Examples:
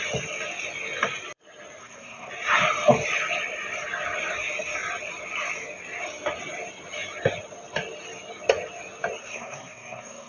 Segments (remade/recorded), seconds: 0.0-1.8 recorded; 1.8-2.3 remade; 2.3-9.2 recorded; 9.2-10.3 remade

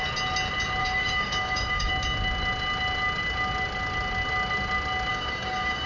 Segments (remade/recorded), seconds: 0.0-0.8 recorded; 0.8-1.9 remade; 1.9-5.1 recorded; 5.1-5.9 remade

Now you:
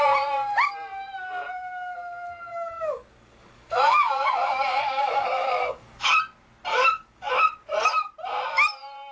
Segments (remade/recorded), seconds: 0.0-2.5 recorded; 2.5-6.1 remade; 6.1-6.7 recorded; 6.7-7.3 remade; 7.3-9.1 recorded

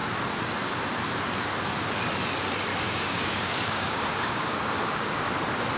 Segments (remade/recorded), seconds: 0.0-2.7 recorded; 2.7-5.3 remade; 5.3-5.8 recorded